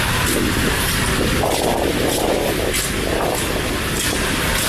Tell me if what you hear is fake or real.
real